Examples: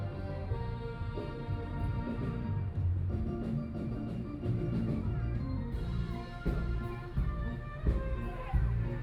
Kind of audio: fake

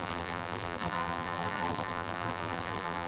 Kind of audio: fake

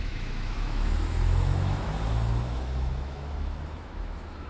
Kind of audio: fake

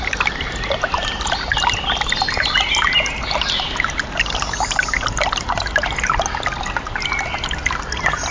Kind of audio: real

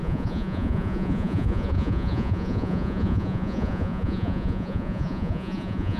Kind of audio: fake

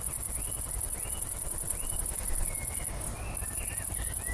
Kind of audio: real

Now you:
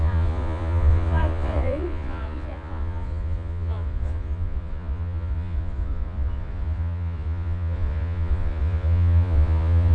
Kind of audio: fake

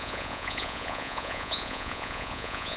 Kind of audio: fake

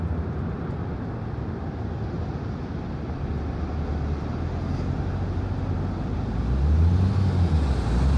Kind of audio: real